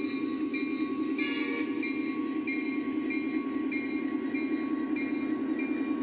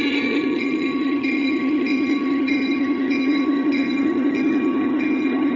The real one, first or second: first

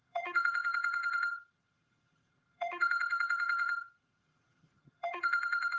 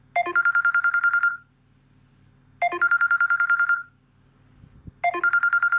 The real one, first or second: second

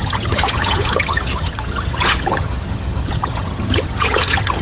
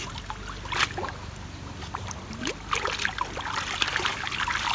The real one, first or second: second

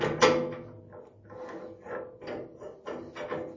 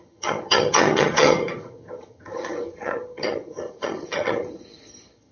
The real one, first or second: first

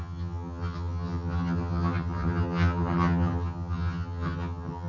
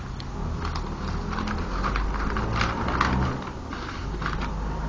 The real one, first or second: second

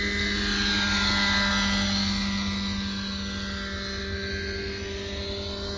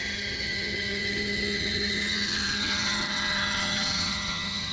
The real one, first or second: first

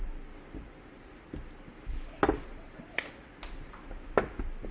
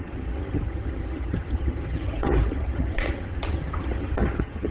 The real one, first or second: first